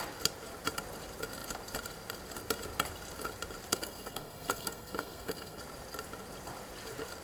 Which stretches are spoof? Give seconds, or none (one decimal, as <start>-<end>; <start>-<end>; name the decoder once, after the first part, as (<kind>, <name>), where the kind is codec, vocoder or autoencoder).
3.7-5.6 (codec, SNAC)